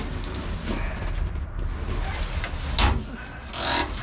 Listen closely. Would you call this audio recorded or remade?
recorded